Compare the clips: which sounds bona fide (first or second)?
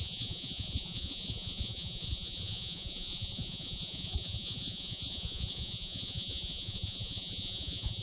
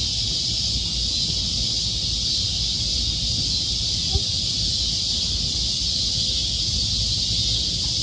second